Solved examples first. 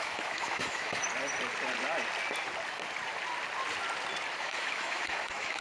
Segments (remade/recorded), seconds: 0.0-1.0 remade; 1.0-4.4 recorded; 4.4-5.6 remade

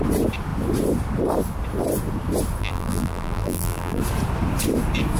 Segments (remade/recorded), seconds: 0.0-2.6 recorded; 2.6-4.0 remade; 4.0-5.2 recorded

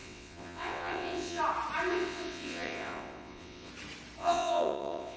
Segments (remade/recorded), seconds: 0.0-1.4 remade; 1.4-1.9 recorded; 1.9-3.7 remade; 3.7-4.2 recorded; 4.2-5.2 remade

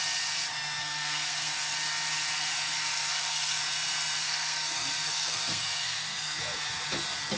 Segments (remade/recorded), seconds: 0.0-0.8 recorded; 0.8-1.7 remade; 1.7-2.8 recorded; 2.8-3.6 remade; 3.6-4.2 recorded; 4.2-6.4 remade; 6.4-7.4 recorded

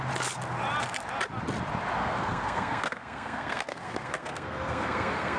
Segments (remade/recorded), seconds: 0.0-2.0 recorded; 2.0-5.4 remade

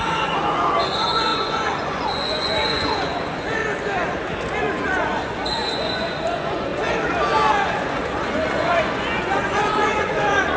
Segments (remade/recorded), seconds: 0.0-3.6 remade; 3.6-4.6 recorded; 4.6-6.7 remade; 6.7-7.5 recorded; 7.5-10.6 remade

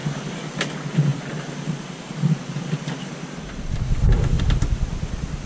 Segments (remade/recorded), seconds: 0.0-5.5 recorded